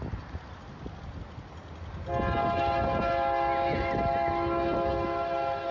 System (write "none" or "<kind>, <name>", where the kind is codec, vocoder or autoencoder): none